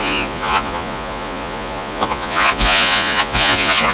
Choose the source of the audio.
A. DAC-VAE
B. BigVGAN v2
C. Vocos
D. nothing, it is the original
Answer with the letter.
C